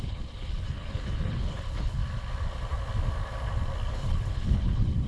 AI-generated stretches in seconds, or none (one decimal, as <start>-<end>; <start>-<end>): 0.0-2.0; 3.9-5.1